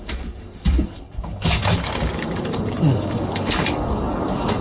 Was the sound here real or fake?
fake